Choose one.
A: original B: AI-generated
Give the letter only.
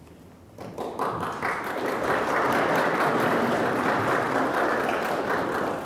A